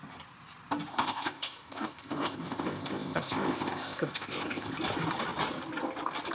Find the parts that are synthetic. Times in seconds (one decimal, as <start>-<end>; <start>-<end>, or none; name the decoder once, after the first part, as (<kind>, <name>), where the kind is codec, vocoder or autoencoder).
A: 0.9-4.7 (codec, ZipCodec)